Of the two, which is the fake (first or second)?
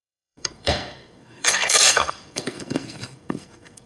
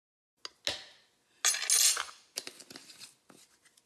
first